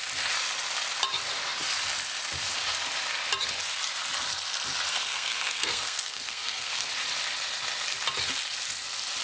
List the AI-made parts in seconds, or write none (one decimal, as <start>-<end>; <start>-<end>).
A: 4.9-6.9